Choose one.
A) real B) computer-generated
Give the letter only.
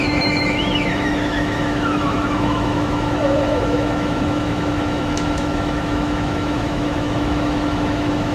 B